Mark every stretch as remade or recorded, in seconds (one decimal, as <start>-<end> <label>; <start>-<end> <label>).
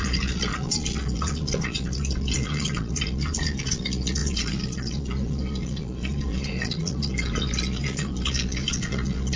0.0-9.4 remade